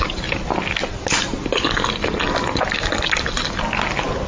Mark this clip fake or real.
real